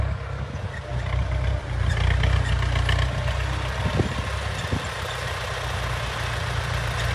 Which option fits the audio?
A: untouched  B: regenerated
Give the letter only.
A